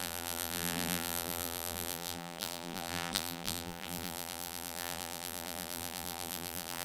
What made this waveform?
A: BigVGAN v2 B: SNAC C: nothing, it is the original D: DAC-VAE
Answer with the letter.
A